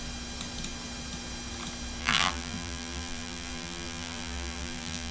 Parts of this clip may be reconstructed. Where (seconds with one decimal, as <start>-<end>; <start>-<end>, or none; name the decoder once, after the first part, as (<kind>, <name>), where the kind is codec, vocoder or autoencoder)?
2.0-5.1 (vocoder, BigVGAN v2)